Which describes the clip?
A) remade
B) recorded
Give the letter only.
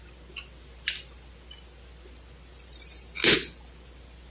B